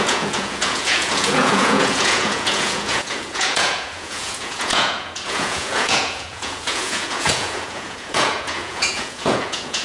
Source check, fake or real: fake